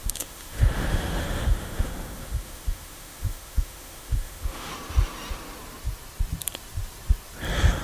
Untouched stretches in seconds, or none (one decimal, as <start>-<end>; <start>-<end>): 4.7-7.8